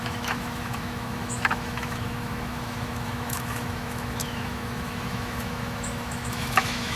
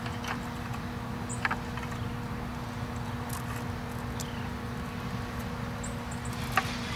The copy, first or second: first